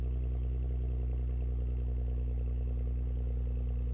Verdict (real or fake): real